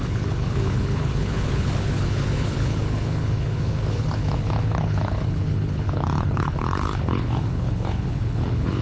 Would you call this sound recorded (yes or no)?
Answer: no